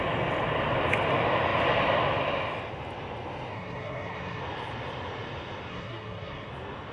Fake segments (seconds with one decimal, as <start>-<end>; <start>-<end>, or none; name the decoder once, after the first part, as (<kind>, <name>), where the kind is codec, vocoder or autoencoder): 3.5-4.4 (codec, SNAC); 5.7-6.5